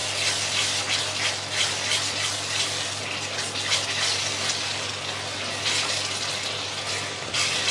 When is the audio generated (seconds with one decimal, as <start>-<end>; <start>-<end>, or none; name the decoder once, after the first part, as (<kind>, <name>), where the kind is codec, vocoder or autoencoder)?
none